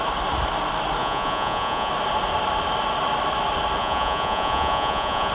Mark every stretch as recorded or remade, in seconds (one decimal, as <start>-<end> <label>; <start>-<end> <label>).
0.0-1.0 recorded; 1.0-1.9 remade; 1.9-3.8 recorded; 3.8-5.3 remade